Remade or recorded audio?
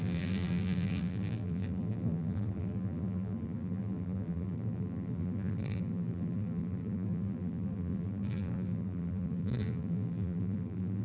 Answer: remade